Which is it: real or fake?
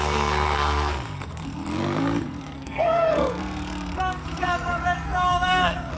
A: fake